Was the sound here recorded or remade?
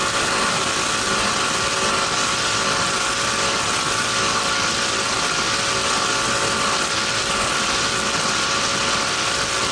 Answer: recorded